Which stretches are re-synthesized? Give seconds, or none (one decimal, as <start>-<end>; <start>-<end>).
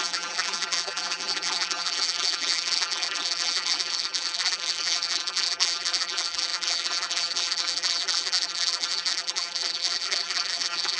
0.0-11.0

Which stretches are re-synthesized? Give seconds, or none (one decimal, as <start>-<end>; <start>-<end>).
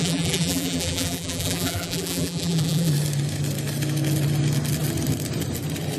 0.0-2.9